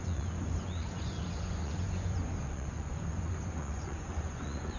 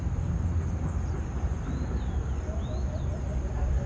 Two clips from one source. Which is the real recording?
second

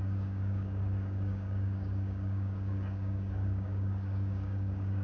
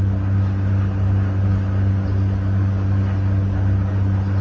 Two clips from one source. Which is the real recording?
second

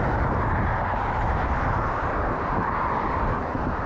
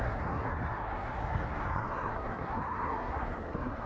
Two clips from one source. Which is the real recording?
first